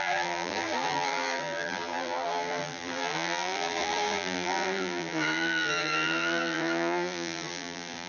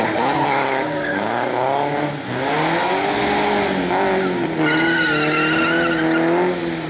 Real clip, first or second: second